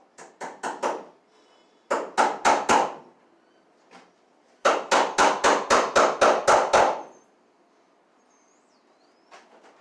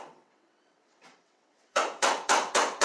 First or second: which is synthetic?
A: second